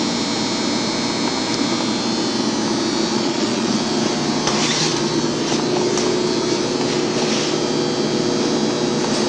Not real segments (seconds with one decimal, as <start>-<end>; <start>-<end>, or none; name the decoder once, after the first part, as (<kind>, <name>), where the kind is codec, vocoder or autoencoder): 3.1-3.8 (vocoder, Vocos)